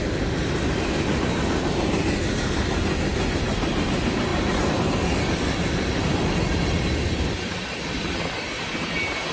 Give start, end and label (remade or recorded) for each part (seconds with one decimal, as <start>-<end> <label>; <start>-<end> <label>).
0.0-3.1 recorded; 3.1-3.7 remade; 3.7-9.3 recorded